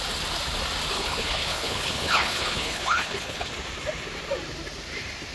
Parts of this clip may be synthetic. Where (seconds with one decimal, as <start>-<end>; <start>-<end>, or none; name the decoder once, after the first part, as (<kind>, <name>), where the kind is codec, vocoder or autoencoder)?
0.9-3.5 (codec, HILCodec)